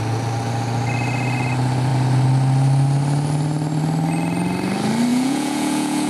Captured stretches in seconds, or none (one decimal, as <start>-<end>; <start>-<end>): 0.0-5.1